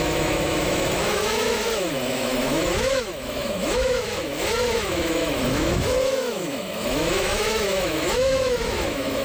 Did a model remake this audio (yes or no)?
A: yes